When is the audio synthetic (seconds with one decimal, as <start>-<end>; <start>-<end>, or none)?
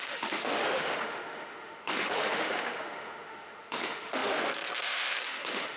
0.0-5.8